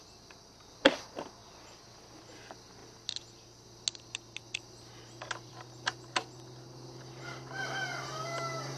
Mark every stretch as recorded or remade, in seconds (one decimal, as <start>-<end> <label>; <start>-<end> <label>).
0.0-8.8 recorded